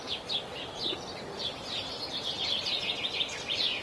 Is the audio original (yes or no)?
yes